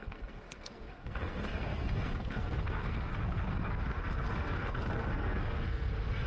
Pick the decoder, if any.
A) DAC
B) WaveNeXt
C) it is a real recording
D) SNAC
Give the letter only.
D